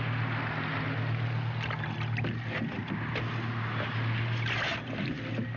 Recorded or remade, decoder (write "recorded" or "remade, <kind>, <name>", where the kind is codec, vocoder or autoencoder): recorded